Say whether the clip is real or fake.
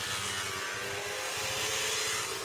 real